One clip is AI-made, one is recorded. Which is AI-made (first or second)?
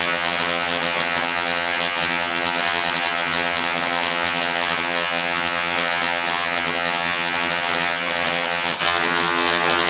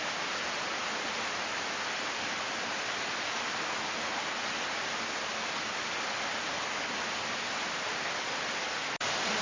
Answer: first